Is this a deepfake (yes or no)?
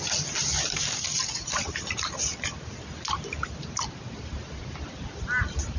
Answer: no